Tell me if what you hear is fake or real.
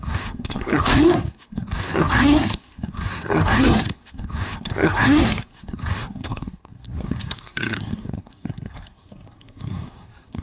fake